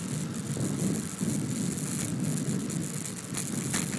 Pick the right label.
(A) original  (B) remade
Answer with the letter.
A